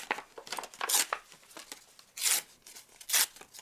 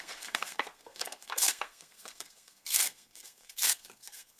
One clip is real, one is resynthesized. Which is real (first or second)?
first